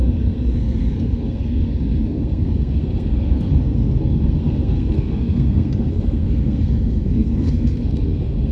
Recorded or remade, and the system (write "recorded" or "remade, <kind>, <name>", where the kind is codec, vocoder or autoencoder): remade, codec, SNAC